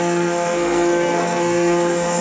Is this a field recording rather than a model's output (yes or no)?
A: no